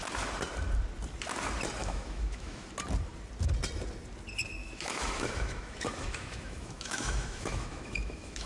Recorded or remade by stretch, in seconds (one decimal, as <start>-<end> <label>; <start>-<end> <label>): 0.0-1.8 recorded; 1.8-2.7 remade; 2.7-4.6 recorded; 4.6-8.5 remade